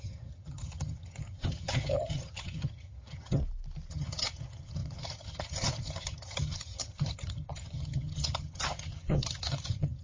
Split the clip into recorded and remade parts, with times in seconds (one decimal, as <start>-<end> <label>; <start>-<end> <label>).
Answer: 0.0-3.4 remade; 3.4-3.9 recorded; 3.9-10.0 remade

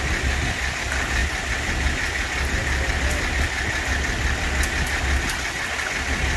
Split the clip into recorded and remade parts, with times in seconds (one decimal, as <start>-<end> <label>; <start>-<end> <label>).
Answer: 0.0-6.4 recorded

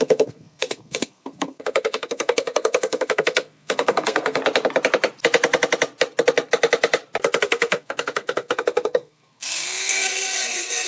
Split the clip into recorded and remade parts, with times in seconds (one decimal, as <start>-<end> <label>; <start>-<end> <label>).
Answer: 0.0-4.4 remade; 4.4-7.4 recorded; 7.4-10.9 remade